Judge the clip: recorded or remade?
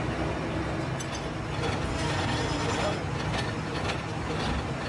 recorded